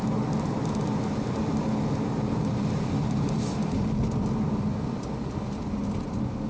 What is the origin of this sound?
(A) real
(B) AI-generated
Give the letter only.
A